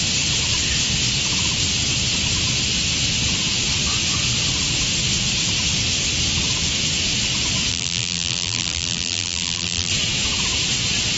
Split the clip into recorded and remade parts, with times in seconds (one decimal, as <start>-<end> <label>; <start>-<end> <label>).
0.0-7.7 recorded; 7.7-9.9 remade; 9.9-11.2 recorded